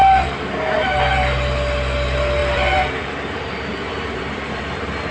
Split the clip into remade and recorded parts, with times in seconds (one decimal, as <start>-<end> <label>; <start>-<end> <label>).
0.0-0.5 remade; 0.5-2.4 recorded; 2.4-5.1 remade